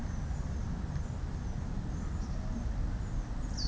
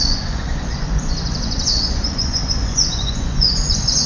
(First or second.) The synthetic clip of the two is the second